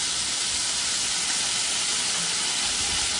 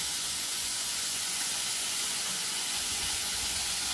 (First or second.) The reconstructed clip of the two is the second